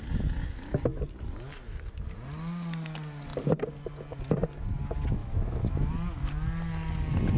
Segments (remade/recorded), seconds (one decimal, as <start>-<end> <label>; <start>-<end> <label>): 0.0-5.2 recorded; 5.2-5.9 remade; 5.9-7.4 recorded